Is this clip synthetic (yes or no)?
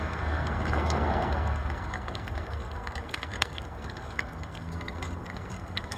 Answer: yes